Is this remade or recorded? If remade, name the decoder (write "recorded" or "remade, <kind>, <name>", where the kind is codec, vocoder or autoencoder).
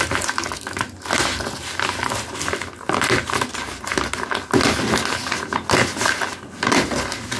recorded